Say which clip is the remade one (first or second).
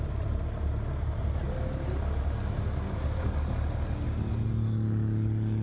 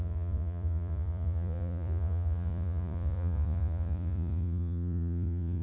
second